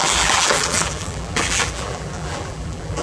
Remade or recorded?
remade